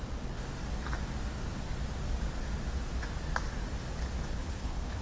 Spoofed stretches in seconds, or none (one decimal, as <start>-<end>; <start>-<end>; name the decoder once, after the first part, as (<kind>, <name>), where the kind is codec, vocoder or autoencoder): 4.3-5.0 (codec, HILCodec)